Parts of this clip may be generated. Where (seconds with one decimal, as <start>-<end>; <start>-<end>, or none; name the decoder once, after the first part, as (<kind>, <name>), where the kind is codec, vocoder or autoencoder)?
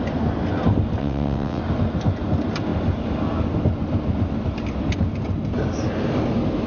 1.0-1.6 (vocoder, WaveNeXt)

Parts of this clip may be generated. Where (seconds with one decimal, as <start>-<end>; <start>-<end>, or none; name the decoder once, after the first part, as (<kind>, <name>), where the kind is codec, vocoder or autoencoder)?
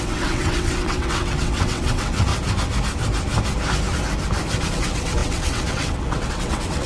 0.0-2.3 (vocoder, WaveNeXt); 4.7-6.9